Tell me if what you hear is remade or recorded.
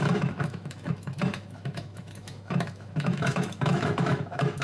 remade